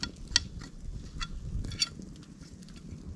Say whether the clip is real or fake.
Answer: real